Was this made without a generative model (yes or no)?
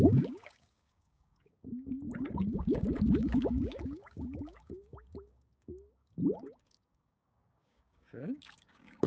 no